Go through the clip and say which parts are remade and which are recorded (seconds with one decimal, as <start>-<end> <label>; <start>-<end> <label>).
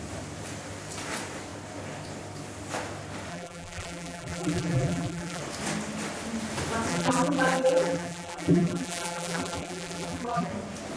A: 0.0-3.3 recorded; 3.3-5.4 remade; 5.4-6.9 recorded; 6.9-10.5 remade; 10.5-11.0 recorded